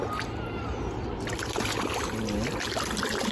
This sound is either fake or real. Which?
real